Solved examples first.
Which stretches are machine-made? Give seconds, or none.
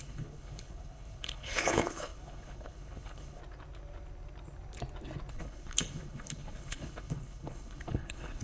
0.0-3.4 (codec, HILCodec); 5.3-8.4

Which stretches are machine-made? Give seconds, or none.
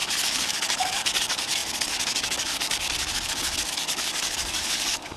0.0-5.2 (codec, DAC)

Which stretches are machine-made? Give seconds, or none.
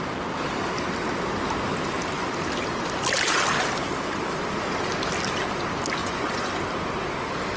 6.0-6.5 (vocoder, Vocos)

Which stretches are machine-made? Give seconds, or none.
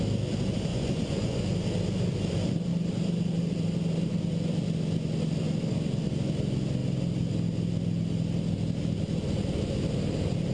0.7-1.4 (vocoder, Vocos)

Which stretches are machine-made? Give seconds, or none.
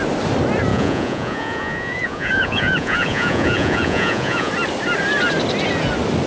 0.7-4.5 (vocoder, Vocos)